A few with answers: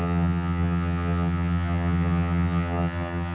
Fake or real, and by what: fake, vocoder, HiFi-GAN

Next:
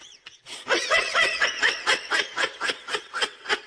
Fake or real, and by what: fake, vocoder, WaveNeXt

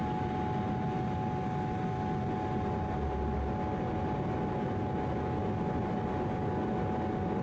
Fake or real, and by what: real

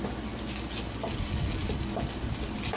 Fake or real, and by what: real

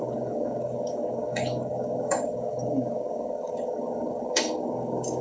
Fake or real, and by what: fake, codec, DAC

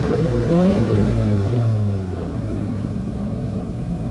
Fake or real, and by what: fake, codec, SNAC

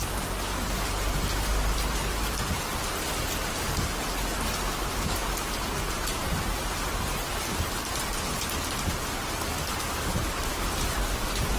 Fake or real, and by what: real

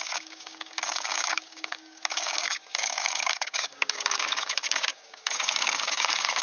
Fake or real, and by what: fake, codec, DAC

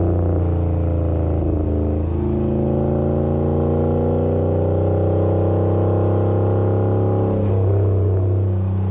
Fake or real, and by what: real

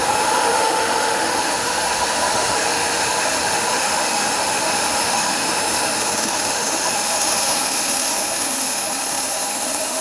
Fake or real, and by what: fake, autoencoder, DAC-VAE